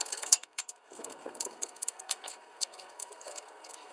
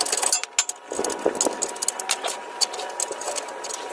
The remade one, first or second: first